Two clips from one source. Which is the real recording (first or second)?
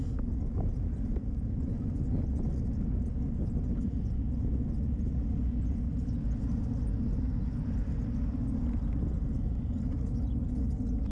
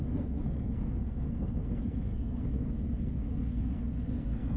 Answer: first